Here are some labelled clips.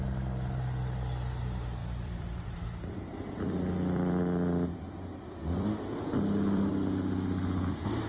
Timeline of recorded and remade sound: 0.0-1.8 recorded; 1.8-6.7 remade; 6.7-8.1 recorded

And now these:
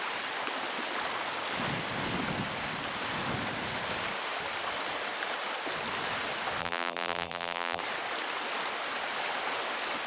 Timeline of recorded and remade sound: 0.0-6.6 recorded; 6.6-7.8 remade; 7.8-10.1 recorded